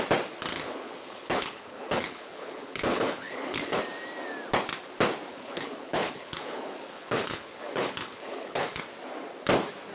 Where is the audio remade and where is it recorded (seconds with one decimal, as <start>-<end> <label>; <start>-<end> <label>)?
0.0-0.5 recorded; 0.5-3.8 remade; 3.8-5.3 recorded; 5.3-8.8 remade; 8.8-9.9 recorded